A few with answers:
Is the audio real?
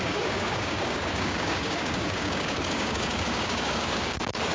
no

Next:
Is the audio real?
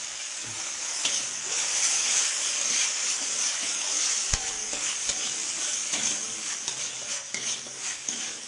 no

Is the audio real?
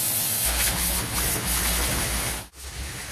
yes